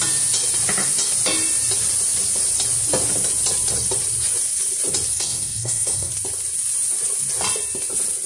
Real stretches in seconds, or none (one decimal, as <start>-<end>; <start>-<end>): 0.0-5.1; 6.1-8.3